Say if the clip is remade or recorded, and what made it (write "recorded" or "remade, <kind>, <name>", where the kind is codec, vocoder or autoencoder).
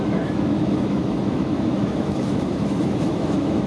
remade, autoencoder, DAC-VAE